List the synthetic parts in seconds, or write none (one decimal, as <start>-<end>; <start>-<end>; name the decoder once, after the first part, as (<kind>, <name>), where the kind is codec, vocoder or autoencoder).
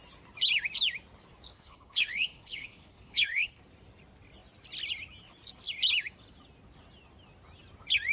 1.5-3.6 (codec, HILCodec)